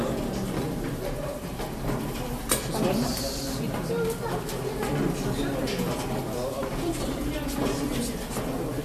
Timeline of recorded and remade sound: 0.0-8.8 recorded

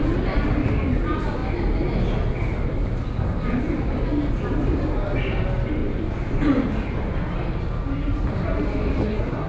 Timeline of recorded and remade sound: 0.0-9.0 recorded; 9.0-9.5 remade